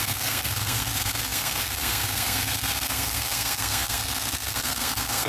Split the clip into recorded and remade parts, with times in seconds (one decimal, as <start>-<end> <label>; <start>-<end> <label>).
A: 0.0-5.3 remade